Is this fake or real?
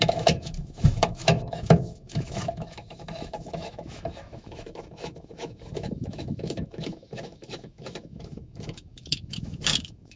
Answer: fake